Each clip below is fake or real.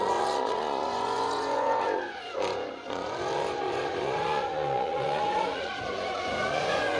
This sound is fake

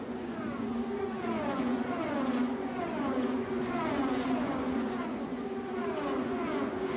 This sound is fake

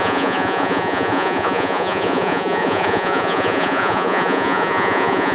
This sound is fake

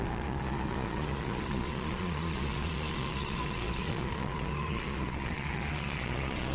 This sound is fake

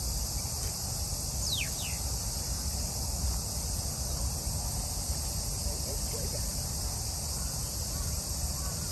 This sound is real